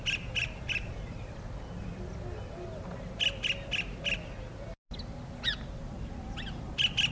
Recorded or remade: recorded